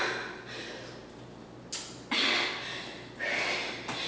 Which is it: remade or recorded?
recorded